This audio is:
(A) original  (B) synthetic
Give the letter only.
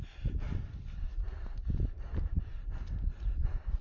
A